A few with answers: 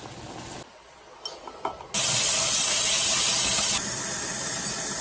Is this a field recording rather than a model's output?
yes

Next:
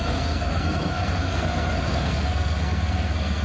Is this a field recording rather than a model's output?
no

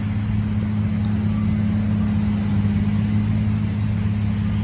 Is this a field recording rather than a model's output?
yes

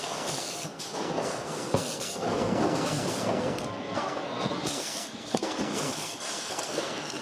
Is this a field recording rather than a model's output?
no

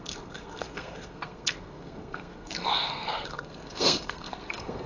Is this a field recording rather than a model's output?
no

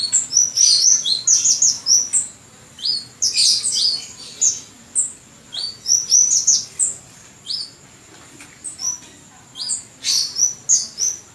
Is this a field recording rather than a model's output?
yes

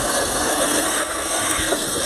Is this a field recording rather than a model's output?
no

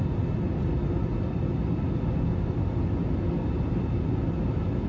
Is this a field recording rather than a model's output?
yes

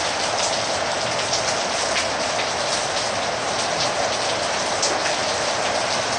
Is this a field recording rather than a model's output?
yes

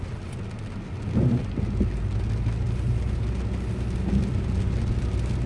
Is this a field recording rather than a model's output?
yes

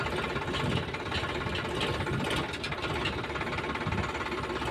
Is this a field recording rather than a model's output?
yes